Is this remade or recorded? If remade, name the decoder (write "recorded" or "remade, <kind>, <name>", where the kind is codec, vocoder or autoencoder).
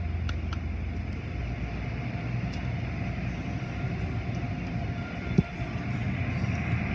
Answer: recorded